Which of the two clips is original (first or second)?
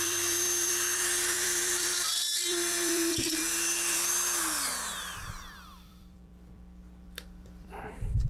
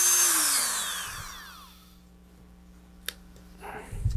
second